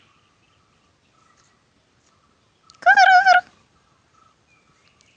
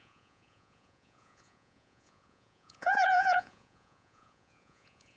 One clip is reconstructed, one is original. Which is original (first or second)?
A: first